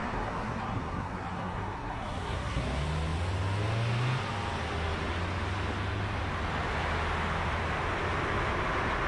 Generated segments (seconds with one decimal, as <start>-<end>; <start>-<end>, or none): 0.0-2.6